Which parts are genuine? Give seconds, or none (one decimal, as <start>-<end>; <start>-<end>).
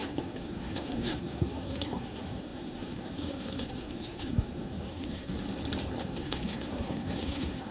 5.3-6.0